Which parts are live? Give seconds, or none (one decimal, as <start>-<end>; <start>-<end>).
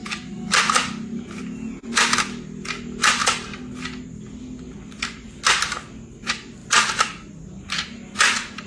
0.0-8.7